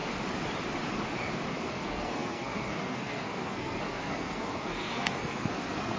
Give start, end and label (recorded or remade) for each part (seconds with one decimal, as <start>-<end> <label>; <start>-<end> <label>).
0.0-1.5 recorded; 1.5-6.0 remade